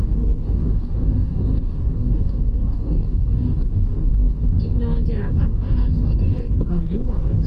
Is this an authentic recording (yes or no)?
no